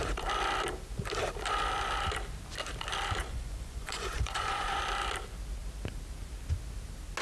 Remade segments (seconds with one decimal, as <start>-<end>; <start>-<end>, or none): 3.2-4.8